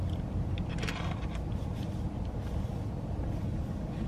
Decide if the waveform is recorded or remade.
remade